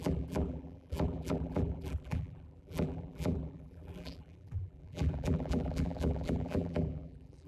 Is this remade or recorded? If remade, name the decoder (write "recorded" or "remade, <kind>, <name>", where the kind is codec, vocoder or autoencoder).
remade, vocoder, BigVGAN v2